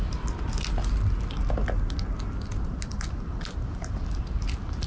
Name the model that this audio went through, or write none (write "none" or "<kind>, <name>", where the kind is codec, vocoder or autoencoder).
none